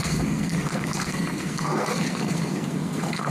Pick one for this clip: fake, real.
fake